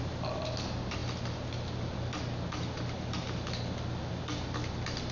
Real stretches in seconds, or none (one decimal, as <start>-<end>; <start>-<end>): 0.0-5.1